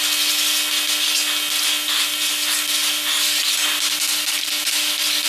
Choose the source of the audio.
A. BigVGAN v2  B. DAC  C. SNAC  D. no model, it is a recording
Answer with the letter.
D